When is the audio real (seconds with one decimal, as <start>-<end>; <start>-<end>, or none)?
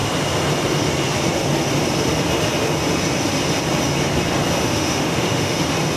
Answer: 0.0-4.6; 5.6-6.0